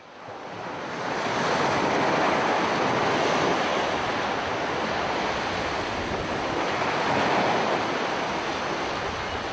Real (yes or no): yes